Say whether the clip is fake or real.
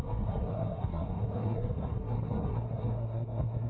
fake